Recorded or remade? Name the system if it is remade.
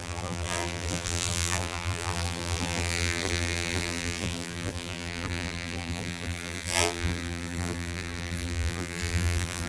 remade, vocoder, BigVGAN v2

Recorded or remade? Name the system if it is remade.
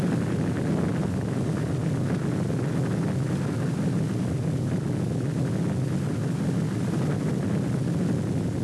recorded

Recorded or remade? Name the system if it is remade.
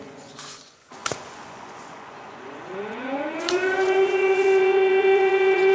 remade, vocoder, Vocos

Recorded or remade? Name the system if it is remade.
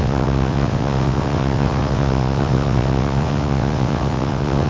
remade, vocoder, WaveNeXt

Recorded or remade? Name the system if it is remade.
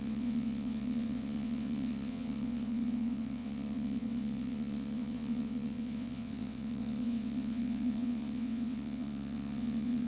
remade, vocoder, WaveNeXt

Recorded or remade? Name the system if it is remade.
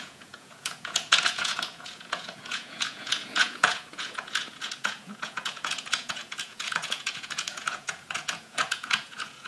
remade, vocoder, Vocos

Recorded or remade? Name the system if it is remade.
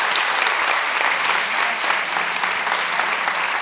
remade, vocoder, BigVGAN v2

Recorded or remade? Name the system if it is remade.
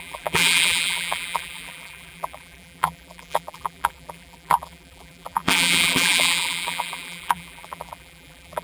remade, vocoder, BigVGAN v2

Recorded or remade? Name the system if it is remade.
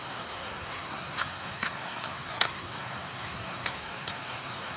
remade, codec, SNAC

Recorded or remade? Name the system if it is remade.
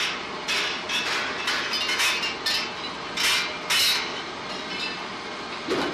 recorded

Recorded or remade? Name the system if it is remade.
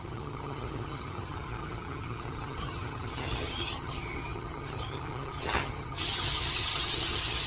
remade, vocoder, HiFi-GAN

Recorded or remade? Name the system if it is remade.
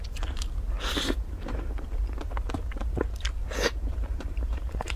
remade, vocoder, BigVGAN v2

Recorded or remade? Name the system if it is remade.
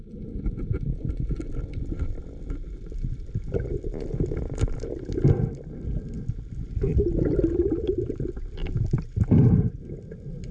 recorded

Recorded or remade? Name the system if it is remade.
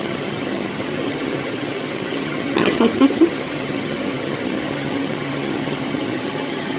remade, vocoder, HiFi-GAN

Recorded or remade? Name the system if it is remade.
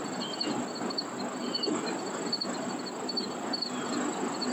recorded